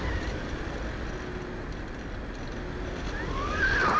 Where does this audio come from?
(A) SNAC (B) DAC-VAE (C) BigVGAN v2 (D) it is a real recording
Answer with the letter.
D